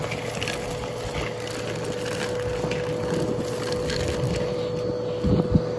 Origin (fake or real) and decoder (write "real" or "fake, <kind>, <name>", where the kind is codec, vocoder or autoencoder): real